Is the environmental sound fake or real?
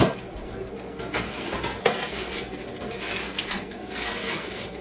fake